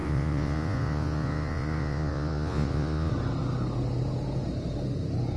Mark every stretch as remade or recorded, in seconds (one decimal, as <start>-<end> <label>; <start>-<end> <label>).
0.0-3.1 remade; 3.1-5.4 recorded